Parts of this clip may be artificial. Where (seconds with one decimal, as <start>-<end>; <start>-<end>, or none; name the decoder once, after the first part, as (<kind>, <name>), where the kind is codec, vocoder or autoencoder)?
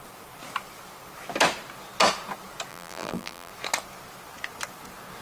2.7-3.5 (vocoder, BigVGAN v2)